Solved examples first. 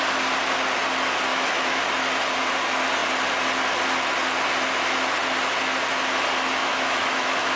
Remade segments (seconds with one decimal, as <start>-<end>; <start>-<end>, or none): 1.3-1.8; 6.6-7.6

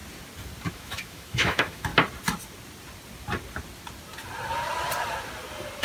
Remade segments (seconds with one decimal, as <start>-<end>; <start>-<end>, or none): 0.7-1.9

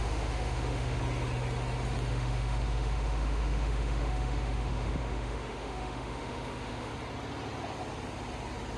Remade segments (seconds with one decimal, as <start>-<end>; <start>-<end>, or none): 0.0-1.0; 2.1-6.9